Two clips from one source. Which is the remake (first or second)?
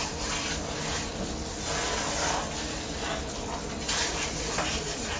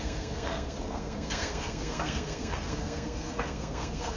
second